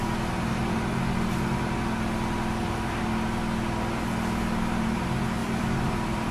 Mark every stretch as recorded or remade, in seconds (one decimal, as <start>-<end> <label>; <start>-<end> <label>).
0.0-5.4 recorded; 5.4-6.3 remade